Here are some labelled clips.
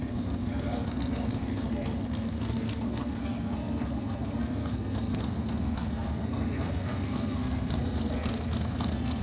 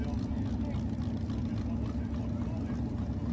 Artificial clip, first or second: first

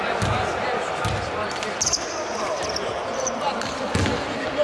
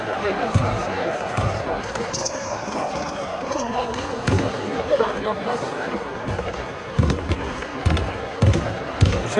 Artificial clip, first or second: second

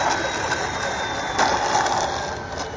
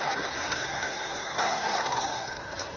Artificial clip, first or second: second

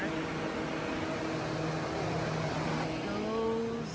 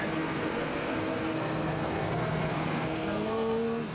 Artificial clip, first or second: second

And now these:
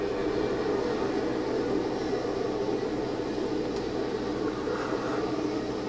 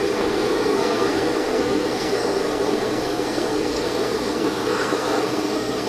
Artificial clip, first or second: second